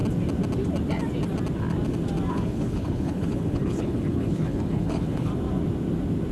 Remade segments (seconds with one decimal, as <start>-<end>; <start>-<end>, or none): 2.3-5.3

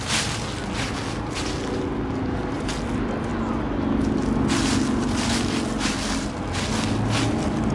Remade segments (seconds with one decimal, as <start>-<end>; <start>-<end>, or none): none

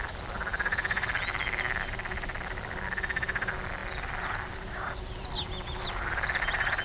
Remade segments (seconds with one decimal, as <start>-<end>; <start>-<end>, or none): none

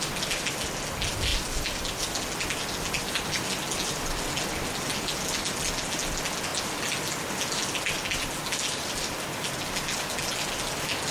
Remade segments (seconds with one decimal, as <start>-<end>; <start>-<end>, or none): none